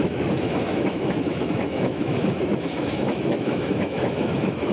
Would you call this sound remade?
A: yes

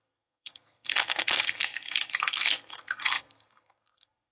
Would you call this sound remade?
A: yes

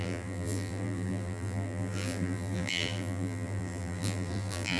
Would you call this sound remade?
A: yes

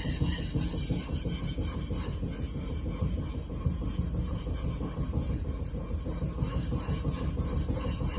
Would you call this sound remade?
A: yes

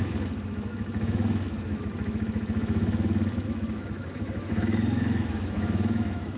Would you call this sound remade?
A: yes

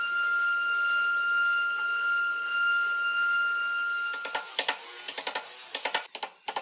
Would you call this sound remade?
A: no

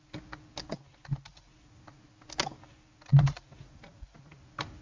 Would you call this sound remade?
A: no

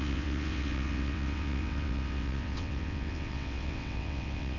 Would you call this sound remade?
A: yes